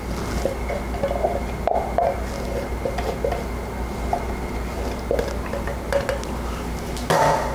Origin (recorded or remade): recorded